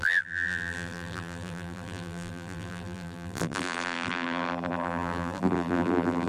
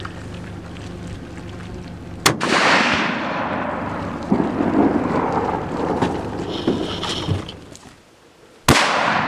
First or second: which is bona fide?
second